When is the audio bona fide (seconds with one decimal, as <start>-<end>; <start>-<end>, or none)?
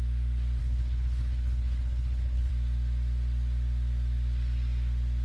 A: 0.0-0.6; 2.5-5.2